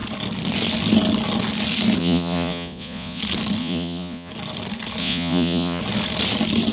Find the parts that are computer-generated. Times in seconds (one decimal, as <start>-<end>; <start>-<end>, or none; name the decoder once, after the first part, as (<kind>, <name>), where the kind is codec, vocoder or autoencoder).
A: 2.0-3.2 (vocoder, Vocos); 3.6-4.3; 5.0-5.8